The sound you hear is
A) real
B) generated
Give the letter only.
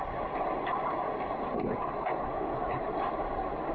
A